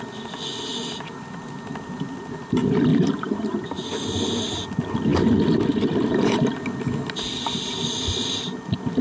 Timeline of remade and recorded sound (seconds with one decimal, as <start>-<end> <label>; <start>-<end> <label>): 0.0-2.9 recorded; 2.9-3.8 remade; 3.8-9.0 recorded